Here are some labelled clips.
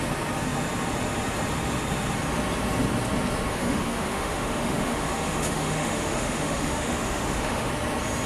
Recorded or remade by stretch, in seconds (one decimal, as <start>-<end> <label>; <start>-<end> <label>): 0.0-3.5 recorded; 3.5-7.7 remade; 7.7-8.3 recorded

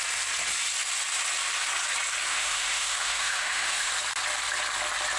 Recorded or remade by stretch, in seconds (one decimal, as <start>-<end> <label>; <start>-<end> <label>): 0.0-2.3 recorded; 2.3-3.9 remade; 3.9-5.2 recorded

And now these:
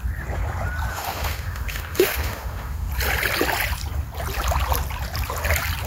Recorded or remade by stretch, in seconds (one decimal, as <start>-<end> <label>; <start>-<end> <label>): 0.0-0.9 recorded; 0.9-2.9 remade; 2.9-5.9 recorded

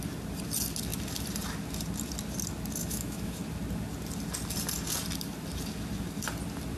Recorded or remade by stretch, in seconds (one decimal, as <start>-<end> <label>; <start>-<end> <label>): 0.0-2.8 recorded; 2.8-3.4 remade; 3.4-6.8 recorded

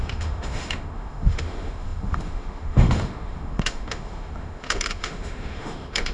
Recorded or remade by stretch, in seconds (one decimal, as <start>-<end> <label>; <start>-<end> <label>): 0.0-6.1 remade